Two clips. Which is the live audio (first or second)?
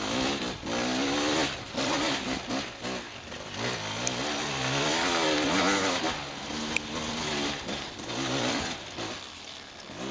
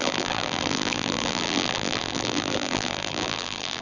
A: first